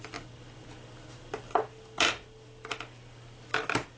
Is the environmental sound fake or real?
real